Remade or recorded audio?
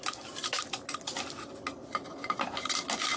recorded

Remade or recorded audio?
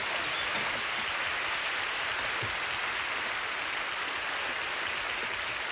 recorded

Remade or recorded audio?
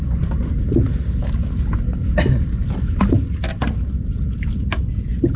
recorded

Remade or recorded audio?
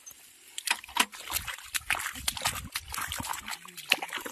recorded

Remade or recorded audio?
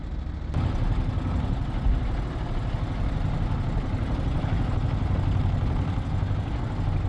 recorded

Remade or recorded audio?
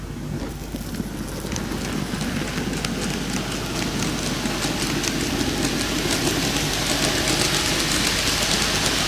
recorded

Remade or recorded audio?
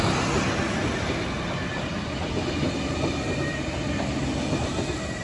recorded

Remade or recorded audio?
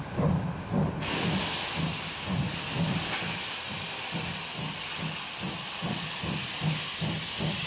recorded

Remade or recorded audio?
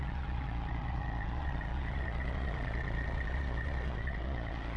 remade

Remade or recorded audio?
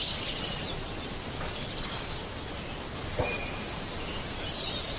recorded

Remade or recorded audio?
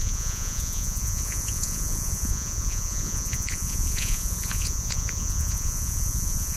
remade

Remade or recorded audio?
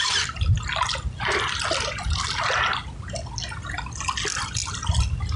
recorded